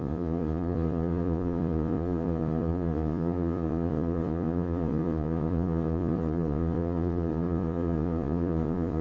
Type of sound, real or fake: fake